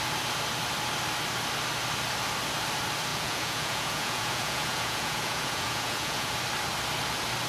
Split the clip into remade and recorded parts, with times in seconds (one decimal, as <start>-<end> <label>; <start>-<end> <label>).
0.0-3.1 recorded; 3.1-6.3 remade; 6.3-7.5 recorded